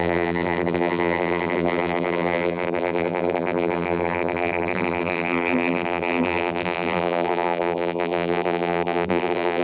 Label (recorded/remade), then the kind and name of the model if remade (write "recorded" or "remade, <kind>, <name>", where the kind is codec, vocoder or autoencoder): remade, vocoder, BigVGAN v2